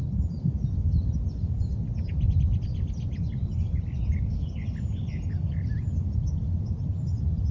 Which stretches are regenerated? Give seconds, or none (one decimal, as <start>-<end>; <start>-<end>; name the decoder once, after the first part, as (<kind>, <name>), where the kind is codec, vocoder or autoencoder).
none